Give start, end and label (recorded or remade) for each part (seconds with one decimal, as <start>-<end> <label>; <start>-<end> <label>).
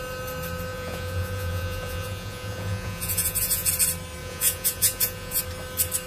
0.0-0.7 recorded; 0.7-3.7 remade; 3.7-4.2 recorded; 4.2-5.4 remade; 5.4-6.1 recorded